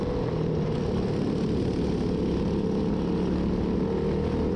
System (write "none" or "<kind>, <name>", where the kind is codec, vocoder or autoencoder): none